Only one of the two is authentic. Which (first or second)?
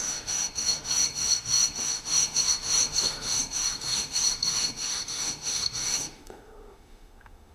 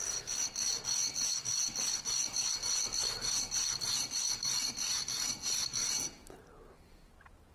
second